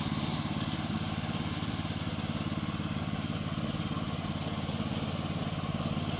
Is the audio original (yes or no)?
yes